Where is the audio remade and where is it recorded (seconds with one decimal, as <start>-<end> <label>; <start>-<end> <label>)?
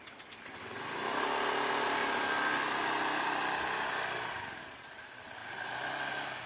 0.0-6.5 recorded